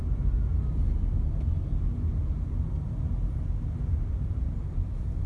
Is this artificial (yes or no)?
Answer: no